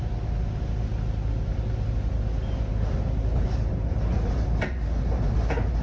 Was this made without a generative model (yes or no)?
yes